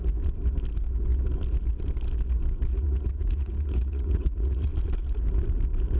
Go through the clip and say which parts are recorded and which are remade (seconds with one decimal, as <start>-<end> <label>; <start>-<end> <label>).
0.0-2.7 recorded; 2.7-4.7 remade; 4.7-6.0 recorded